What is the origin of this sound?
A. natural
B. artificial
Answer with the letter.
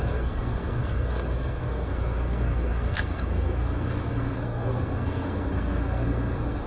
B